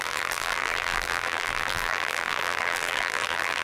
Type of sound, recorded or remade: remade